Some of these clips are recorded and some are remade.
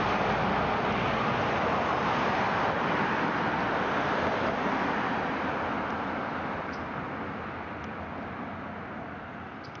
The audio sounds recorded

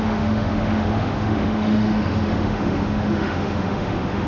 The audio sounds remade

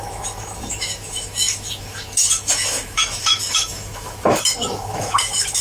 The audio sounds remade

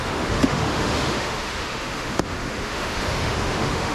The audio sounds remade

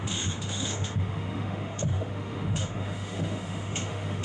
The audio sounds remade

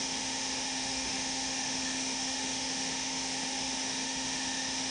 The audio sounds remade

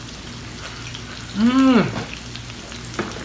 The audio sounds recorded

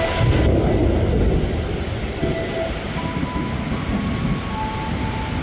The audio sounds recorded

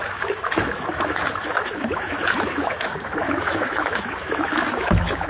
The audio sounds remade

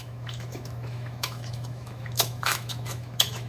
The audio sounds remade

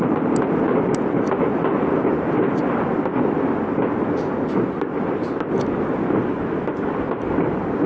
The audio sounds recorded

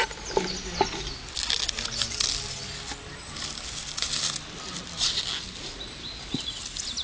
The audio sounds recorded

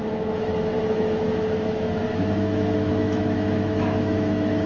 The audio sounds remade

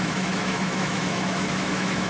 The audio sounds remade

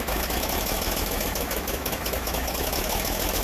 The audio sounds remade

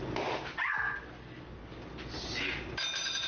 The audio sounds recorded